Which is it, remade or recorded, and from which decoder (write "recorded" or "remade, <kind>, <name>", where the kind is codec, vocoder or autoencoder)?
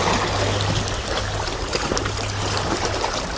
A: recorded